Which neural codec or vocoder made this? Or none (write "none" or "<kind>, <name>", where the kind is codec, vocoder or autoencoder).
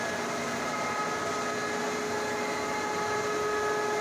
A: none